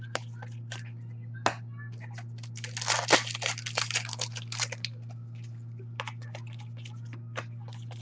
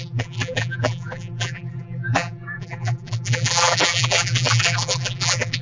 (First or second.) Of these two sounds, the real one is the first